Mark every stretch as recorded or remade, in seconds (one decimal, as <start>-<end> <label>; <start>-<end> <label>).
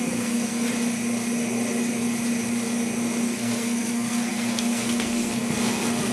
0.0-0.7 remade; 0.7-3.2 recorded; 3.2-6.1 remade